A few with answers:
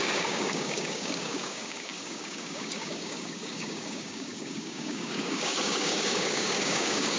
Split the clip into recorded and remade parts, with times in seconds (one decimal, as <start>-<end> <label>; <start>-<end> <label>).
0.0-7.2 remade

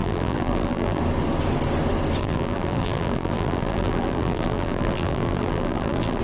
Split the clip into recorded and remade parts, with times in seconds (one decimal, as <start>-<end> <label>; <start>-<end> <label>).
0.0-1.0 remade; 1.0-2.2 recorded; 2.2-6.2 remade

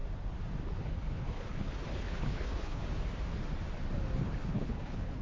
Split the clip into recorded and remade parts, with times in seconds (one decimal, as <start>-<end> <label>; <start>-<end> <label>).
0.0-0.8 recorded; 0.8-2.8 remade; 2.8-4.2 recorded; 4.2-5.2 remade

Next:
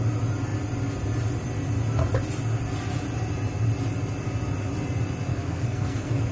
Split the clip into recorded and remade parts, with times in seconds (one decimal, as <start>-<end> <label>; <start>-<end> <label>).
0.0-5.3 recorded; 5.3-6.3 remade

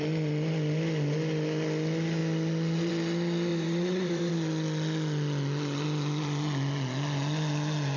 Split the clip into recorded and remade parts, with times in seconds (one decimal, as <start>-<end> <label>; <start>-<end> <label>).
0.0-3.5 recorded; 3.5-4.3 remade; 4.3-8.0 recorded